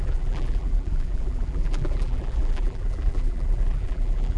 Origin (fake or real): fake